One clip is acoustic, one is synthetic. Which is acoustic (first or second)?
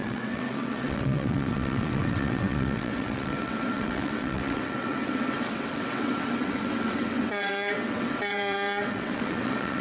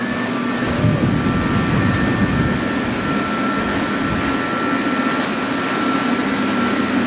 second